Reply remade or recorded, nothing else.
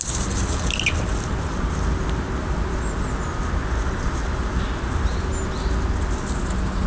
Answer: recorded